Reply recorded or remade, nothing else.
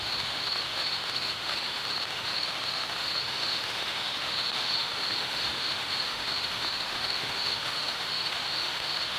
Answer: remade